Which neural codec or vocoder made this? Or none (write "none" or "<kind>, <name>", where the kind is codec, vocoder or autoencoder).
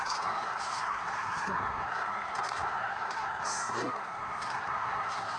codec, SNAC